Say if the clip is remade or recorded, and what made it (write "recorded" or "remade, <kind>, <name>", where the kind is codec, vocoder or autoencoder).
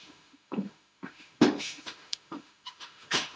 remade, autoencoder, DAC-VAE